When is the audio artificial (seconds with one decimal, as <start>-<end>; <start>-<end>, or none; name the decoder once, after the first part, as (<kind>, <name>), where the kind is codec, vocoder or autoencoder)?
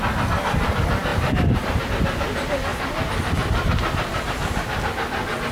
1.1-1.8 (vocoder, BigVGAN v2); 2.7-4.6